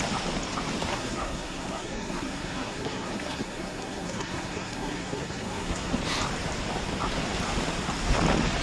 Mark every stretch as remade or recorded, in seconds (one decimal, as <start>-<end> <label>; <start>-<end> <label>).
0.0-0.9 recorded; 0.9-6.0 remade; 6.0-8.6 recorded

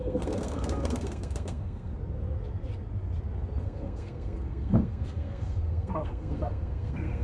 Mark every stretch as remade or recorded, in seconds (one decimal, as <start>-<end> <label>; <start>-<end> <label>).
0.0-1.9 remade; 1.9-3.6 recorded; 3.6-7.2 remade

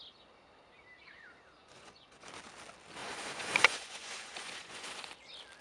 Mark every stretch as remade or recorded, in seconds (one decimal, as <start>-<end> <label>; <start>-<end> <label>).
0.0-1.6 recorded; 1.6-2.3 remade; 2.3-3.0 recorded; 3.0-5.1 remade; 5.1-5.6 recorded

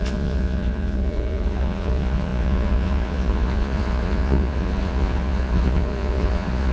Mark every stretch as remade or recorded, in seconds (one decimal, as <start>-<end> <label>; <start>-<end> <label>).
0.0-6.7 remade

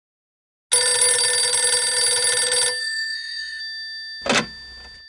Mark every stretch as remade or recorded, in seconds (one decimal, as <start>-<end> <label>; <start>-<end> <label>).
0.0-2.8 recorded; 2.8-3.6 remade; 3.6-5.1 recorded

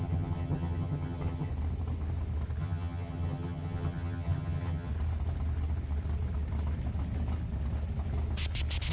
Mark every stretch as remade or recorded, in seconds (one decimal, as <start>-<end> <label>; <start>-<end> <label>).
0.0-1.5 remade; 1.5-2.6 recorded; 2.6-4.9 remade; 4.9-8.9 recorded